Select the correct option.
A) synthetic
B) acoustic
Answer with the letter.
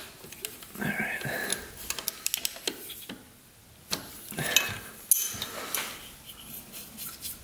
B